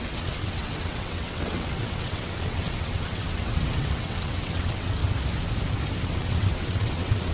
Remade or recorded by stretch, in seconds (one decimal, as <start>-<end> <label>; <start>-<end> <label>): 0.0-5.0 remade; 5.0-6.0 recorded; 6.0-7.3 remade